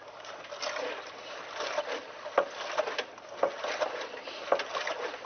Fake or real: fake